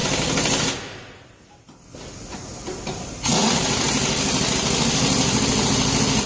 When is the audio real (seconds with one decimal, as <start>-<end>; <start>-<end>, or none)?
0.0-6.3